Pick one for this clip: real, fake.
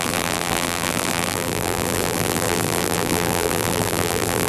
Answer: fake